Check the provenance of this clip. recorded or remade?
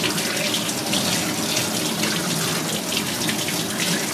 recorded